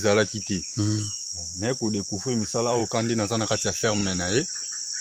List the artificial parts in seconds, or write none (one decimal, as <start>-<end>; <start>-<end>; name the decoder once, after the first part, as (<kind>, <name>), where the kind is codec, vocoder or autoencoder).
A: 0.0-2.8 (autoencoder, DAC-VAE); 3.5-4.0